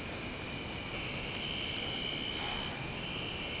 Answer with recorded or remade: recorded